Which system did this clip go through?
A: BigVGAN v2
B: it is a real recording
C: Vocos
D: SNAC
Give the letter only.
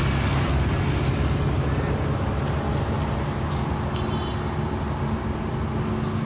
B